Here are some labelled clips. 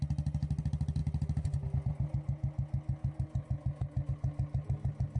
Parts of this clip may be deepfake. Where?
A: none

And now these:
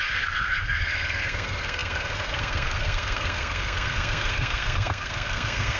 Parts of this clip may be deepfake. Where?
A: 0.0-5.8 (codec, SNAC)

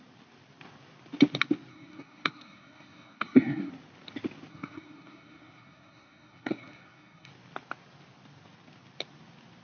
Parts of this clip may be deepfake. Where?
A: 1.7-3.7 (codec, SNAC); 4.5-7.3

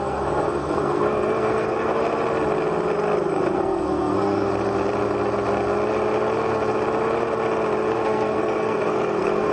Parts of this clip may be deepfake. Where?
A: 0.0-2.0 (codec, SNAC); 3.3-4.5; 7.9-9.5

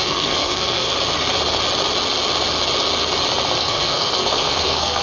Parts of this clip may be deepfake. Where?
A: 0.0-0.9 (codec, SNAC); 3.6-5.0